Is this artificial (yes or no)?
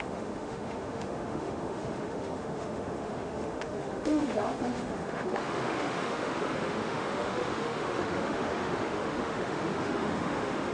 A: yes